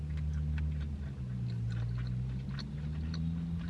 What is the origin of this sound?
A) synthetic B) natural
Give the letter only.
B